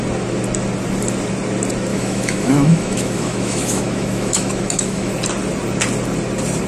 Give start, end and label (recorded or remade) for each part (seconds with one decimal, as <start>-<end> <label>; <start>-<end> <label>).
0.0-1.9 recorded; 1.9-5.1 remade; 5.1-6.7 recorded